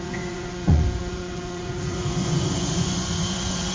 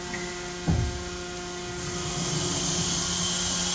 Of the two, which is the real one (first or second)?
second